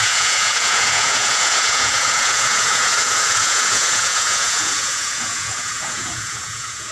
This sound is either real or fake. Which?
fake